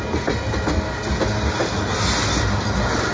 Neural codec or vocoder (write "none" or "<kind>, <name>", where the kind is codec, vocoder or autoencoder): none